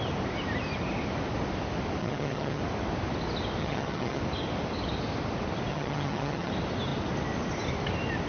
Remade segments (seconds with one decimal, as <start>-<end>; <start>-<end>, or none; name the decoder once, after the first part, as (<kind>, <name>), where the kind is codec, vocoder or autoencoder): 2.0-2.6 (vocoder, HiFi-GAN); 3.6-4.2; 5.7-6.5